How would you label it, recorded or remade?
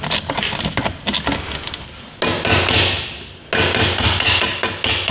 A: recorded